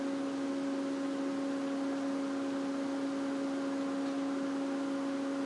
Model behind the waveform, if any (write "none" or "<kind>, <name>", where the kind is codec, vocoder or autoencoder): none